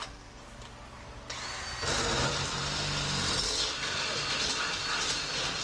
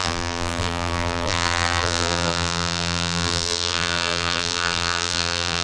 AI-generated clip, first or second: second